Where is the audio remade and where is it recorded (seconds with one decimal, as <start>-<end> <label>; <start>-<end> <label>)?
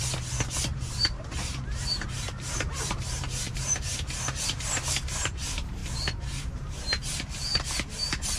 0.0-0.7 recorded; 0.7-8.4 remade